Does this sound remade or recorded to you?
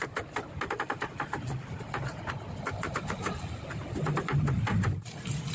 recorded